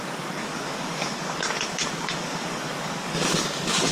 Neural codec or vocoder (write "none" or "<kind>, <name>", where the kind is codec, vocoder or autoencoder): codec, DAC